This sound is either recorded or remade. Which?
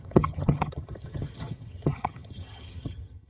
remade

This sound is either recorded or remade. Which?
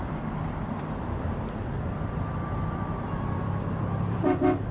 remade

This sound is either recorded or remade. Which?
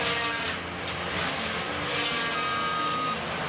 recorded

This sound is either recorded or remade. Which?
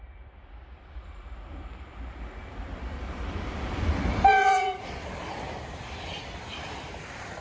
remade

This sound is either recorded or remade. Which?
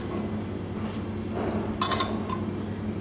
recorded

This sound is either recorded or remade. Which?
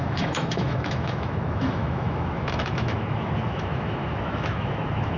remade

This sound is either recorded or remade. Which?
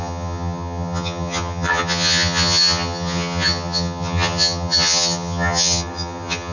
remade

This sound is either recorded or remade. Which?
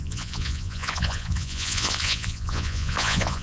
remade